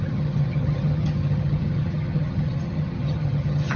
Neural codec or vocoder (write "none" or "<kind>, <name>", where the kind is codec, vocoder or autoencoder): vocoder, HiFi-GAN